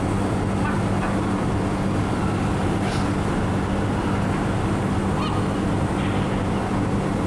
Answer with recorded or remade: recorded